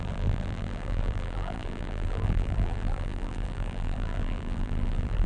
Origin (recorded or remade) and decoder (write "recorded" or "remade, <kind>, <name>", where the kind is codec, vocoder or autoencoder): remade, vocoder, BigVGAN v2